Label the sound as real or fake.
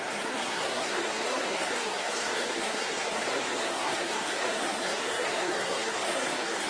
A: fake